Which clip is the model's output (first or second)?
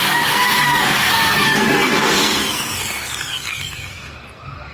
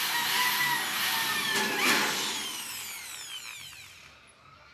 first